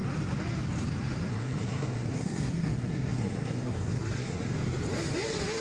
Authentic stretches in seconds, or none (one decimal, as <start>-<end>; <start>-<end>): 0.0-1.3; 4.5-5.6